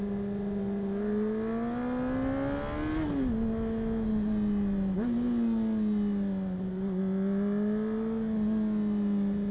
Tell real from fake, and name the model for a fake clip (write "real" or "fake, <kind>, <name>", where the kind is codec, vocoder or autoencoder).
real